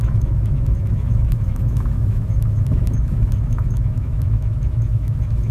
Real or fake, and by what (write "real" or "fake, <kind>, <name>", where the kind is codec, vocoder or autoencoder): fake, autoencoder, DAC-VAE